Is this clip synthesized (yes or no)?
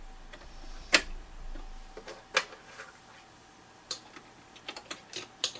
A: no